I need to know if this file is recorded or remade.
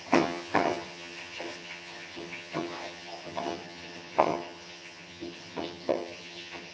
remade